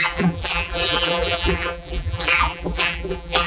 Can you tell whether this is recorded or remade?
remade